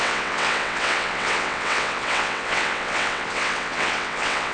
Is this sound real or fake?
fake